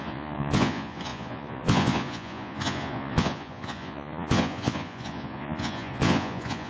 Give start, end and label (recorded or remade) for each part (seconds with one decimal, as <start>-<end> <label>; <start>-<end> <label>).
0.0-6.7 remade